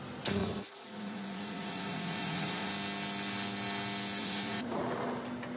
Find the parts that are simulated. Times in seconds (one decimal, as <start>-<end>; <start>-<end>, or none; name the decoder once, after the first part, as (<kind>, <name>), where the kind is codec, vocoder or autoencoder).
0.4-2.7 (vocoder, Vocos); 4.2-4.8

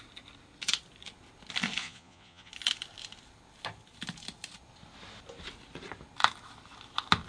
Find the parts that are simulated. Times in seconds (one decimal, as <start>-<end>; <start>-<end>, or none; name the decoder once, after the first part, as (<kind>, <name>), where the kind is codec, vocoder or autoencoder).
1.8-2.5 (vocoder, Vocos)

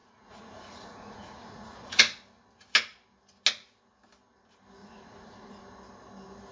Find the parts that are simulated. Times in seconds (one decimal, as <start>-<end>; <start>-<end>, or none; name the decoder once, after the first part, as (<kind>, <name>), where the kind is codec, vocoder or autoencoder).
0.0-2.0 (vocoder, Vocos); 4.8-5.6

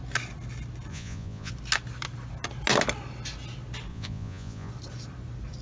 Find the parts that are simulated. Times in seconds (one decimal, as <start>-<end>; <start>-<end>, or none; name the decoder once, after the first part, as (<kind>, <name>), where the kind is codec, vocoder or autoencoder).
0.9-1.5 (vocoder, Vocos); 3.9-4.7

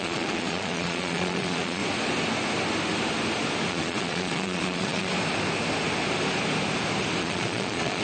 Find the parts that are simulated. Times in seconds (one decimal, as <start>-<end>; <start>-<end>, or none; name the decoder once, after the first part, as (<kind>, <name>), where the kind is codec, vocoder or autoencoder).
0.0-1.8 (vocoder, Vocos); 3.7-5.1; 7.2-8.0

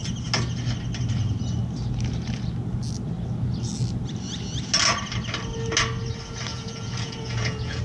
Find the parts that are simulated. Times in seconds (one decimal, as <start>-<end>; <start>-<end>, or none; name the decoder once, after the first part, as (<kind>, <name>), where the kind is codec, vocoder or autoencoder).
6.5-7.8 (vocoder, Vocos)

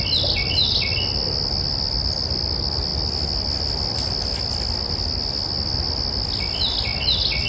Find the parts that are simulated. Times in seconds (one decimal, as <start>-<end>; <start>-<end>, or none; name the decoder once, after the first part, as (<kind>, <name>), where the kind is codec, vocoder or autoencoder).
none

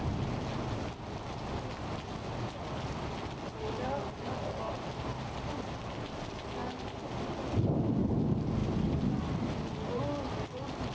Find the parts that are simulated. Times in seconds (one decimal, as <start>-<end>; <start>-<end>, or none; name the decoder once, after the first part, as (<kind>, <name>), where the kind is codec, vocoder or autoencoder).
none